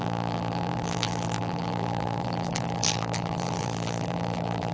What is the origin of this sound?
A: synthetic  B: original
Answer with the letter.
A